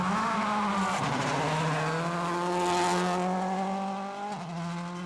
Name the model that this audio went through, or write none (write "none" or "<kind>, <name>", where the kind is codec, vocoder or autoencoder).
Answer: none